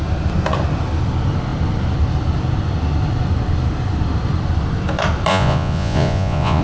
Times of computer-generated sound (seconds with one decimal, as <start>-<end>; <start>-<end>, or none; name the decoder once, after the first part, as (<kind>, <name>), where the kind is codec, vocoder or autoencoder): 5.3-6.6 (vocoder, Vocos)